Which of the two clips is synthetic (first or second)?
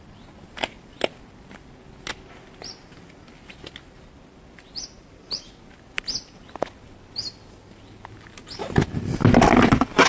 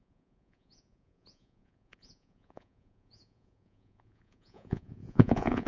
second